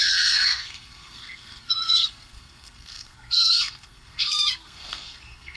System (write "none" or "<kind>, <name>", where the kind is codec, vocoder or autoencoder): codec, SNAC